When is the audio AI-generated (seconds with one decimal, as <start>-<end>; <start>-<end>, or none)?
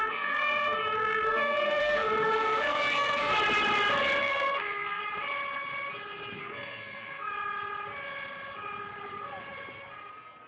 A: 0.0-3.3; 4.2-5.0; 6.4-7.3; 10.1-10.5